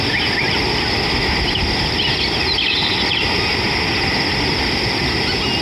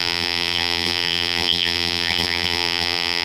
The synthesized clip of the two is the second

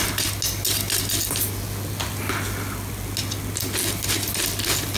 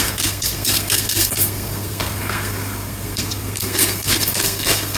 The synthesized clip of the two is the second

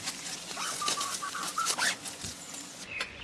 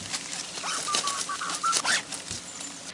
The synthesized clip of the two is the first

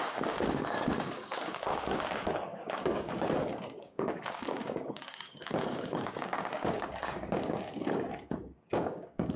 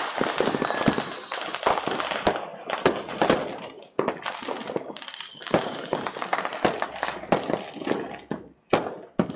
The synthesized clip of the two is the first